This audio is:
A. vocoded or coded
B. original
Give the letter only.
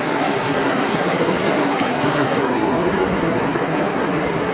A